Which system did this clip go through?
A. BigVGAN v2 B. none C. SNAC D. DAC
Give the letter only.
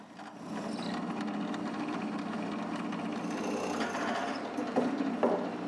B